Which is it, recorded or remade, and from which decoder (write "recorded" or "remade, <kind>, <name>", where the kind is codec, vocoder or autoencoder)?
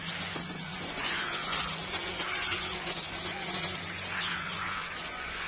remade, vocoder, Vocos